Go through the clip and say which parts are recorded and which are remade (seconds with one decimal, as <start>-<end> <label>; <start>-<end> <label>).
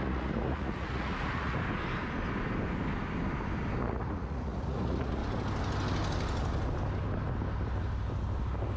0.0-1.6 remade; 1.6-3.8 recorded; 3.8-5.2 remade; 5.2-8.8 recorded